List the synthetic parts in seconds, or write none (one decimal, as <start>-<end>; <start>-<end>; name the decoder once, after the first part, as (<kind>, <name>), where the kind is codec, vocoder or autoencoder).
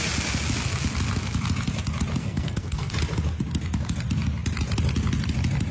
2.2-2.9 (codec, SNAC)